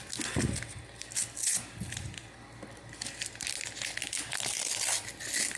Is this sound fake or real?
real